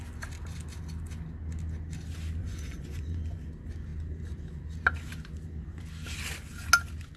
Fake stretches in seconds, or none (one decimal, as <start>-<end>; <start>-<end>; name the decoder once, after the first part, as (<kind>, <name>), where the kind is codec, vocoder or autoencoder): 2.4-3.5 (vocoder, Vocos)